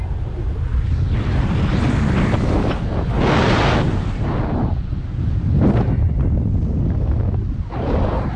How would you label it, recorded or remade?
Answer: recorded